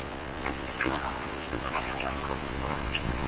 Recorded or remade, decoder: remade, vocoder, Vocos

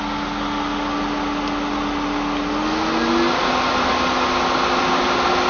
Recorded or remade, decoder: recorded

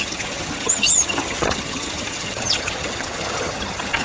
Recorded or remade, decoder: remade, vocoder, HiFi-GAN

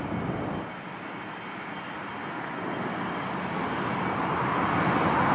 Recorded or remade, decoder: recorded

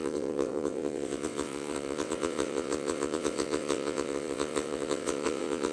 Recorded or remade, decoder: remade, vocoder, WaveNeXt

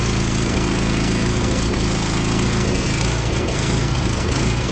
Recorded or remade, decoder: remade, codec, SNAC